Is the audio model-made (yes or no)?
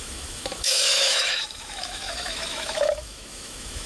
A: yes